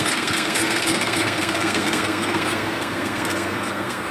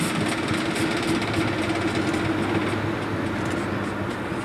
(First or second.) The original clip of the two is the second